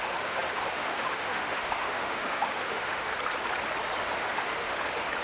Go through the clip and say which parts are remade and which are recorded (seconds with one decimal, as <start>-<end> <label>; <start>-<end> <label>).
0.0-3.1 remade; 3.1-4.0 recorded; 4.0-5.2 remade